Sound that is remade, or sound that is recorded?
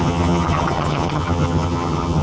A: remade